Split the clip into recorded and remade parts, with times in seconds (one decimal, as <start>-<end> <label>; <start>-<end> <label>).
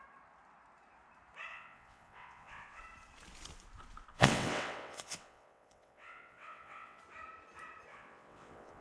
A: 0.0-1.5 recorded; 1.5-2.8 remade; 2.8-4.1 recorded; 4.1-7.0 remade; 7.0-7.9 recorded; 7.9-8.8 remade